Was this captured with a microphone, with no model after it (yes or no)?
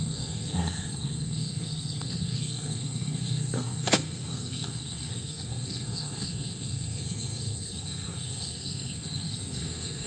no